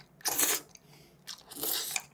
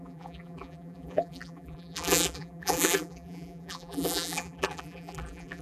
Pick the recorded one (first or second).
first